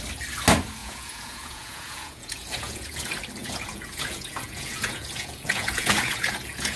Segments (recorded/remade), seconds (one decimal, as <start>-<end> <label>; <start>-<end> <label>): 0.0-0.8 recorded; 0.8-3.0 remade; 3.0-3.4 recorded; 3.4-6.8 remade